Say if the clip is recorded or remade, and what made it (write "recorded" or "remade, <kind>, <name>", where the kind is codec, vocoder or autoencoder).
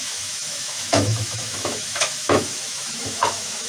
remade, autoencoder, DAC-VAE